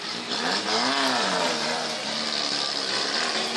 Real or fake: real